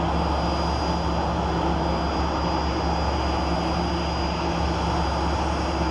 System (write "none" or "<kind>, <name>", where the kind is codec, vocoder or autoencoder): none